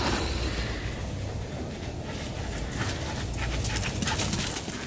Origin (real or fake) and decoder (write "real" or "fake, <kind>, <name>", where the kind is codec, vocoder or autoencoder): real